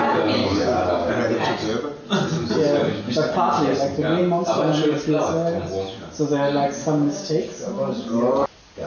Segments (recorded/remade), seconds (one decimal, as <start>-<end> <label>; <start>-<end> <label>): 0.0-0.4 recorded; 0.4-1.1 remade; 1.1-6.8 recorded; 6.8-7.3 remade; 7.3-8.9 recorded